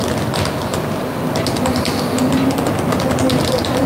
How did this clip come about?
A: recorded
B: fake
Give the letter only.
A